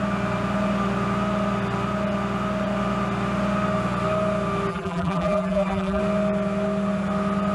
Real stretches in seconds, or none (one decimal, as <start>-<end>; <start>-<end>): 0.0-4.7; 6.0-7.5